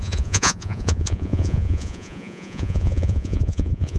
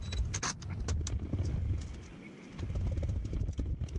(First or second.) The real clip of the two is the second